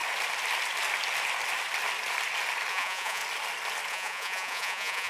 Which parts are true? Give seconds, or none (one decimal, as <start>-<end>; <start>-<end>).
0.0-2.7; 3.2-3.9